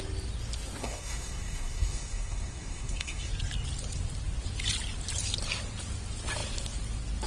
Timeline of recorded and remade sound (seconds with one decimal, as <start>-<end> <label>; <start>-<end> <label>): 0.0-0.8 recorded; 0.8-3.3 remade; 3.3-7.3 recorded